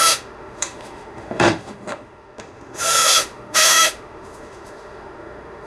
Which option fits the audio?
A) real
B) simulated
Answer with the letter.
B